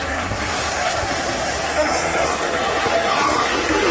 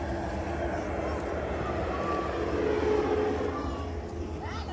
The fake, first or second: first